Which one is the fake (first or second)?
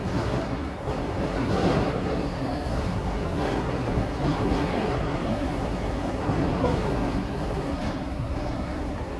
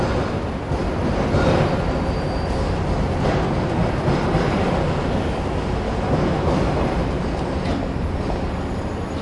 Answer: first